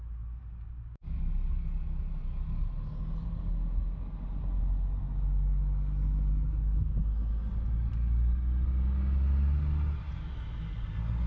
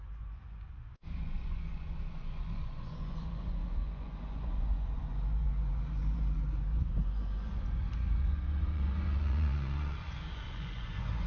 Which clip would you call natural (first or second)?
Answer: first